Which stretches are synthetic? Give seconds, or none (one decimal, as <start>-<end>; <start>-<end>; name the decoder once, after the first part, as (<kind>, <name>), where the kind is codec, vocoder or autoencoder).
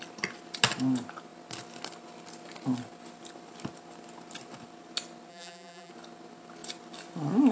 5.3-5.9 (vocoder, BigVGAN v2)